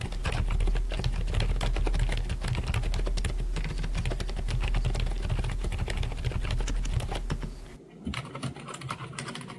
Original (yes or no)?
yes